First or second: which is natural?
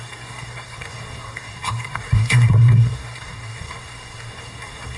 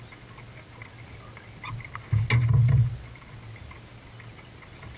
second